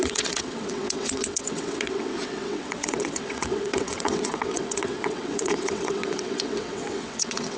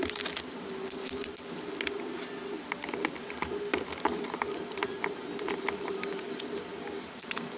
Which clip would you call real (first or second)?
second